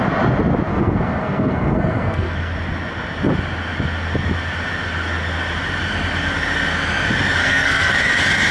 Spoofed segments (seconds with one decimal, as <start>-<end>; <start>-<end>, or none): 0.7-2.6; 7.4-8.0